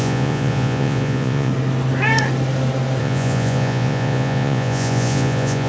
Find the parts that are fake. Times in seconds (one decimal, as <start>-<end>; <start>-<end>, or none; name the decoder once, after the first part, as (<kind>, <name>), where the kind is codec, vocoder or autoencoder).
0.0-1.5 (vocoder, Vocos); 3.0-5.7